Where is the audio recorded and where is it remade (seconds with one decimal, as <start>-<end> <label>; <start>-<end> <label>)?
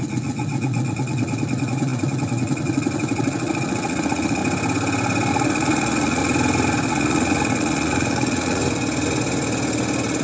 0.0-4.4 remade; 4.4-5.3 recorded; 5.3-6.2 remade; 6.2-6.9 recorded; 6.9-8.6 remade; 8.6-10.2 recorded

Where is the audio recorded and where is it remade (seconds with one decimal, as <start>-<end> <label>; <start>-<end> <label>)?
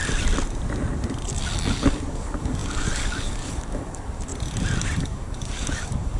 0.0-1.7 recorded; 1.7-4.3 remade; 4.3-5.0 recorded; 5.0-6.2 remade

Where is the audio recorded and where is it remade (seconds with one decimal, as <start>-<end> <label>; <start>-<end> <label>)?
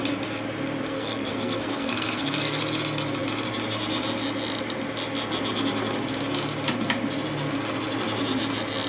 0.0-0.8 recorded; 0.8-2.6 remade; 2.6-8.9 recorded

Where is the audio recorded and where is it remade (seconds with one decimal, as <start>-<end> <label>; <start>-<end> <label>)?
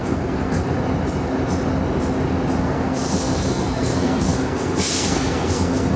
0.0-0.6 remade; 0.6-2.6 recorded; 2.6-6.0 remade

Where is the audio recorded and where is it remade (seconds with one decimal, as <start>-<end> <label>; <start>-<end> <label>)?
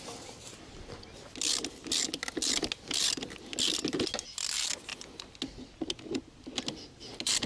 0.0-7.5 recorded